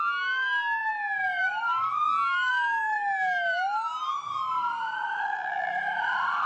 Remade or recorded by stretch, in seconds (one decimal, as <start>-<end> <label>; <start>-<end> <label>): 0.0-5.0 recorded; 5.0-5.7 remade; 5.7-6.5 recorded